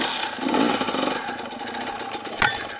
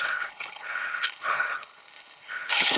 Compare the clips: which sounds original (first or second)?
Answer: first